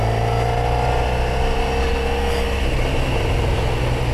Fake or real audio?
real